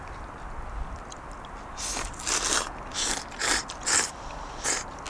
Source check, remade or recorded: recorded